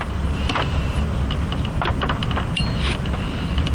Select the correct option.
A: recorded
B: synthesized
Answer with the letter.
A